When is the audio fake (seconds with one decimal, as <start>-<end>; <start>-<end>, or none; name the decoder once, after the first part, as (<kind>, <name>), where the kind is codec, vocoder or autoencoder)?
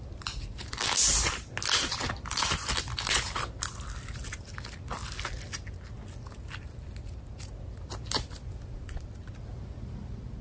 none